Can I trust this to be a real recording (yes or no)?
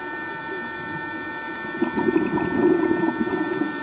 yes